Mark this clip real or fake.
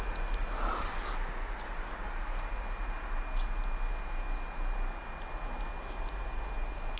real